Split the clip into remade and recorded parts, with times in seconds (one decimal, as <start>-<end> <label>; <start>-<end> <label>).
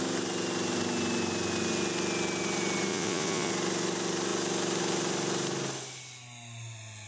0.0-2.9 recorded; 2.9-3.5 remade; 3.5-7.1 recorded